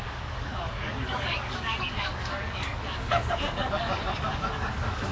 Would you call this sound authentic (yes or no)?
no